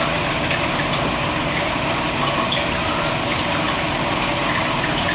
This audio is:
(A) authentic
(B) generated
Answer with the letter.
A